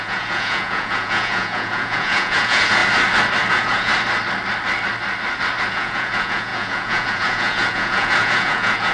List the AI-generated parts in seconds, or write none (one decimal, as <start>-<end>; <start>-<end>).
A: 0.0-2.8; 3.5-3.9; 5.7-8.9